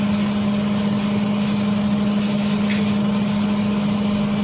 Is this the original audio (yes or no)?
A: yes